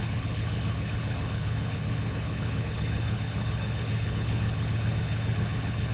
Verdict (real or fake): fake